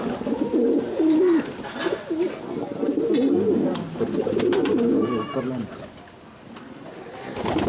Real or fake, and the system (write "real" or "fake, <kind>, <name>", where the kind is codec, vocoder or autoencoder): real